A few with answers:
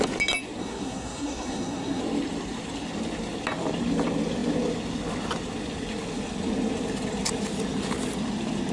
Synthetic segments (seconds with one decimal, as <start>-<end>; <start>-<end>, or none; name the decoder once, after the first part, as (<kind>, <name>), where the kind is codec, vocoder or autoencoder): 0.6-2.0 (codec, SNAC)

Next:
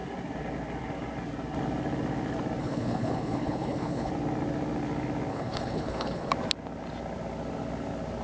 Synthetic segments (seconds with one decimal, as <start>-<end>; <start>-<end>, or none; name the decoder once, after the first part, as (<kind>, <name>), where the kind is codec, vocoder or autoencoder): 2.6-4.1 (codec, HILCodec); 5.3-6.3

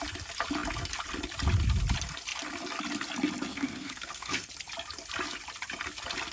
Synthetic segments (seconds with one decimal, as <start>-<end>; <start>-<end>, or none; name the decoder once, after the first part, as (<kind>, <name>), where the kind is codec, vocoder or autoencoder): 3.5-4.5 (codec, SNAC)